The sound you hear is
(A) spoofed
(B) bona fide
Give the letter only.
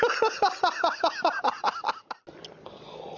B